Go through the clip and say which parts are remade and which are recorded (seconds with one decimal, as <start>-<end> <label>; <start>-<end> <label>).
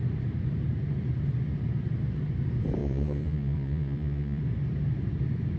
0.0-2.8 recorded; 2.8-4.4 remade; 4.4-5.6 recorded